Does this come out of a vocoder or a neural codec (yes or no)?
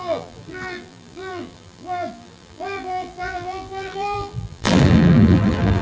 yes